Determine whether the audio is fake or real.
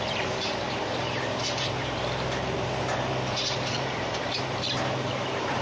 fake